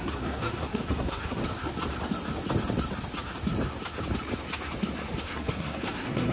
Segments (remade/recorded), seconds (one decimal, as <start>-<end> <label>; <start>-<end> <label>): 0.0-1.4 remade; 1.4-5.2 recorded; 5.2-6.3 remade